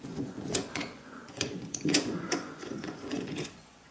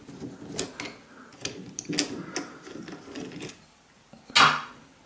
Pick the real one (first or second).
second